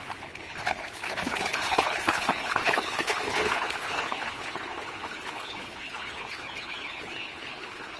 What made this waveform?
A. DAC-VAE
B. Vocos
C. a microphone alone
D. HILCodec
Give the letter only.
D